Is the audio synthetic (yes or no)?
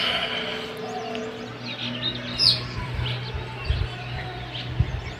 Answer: yes